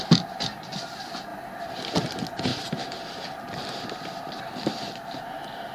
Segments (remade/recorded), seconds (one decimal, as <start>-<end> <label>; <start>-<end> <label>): 0.0-5.7 recorded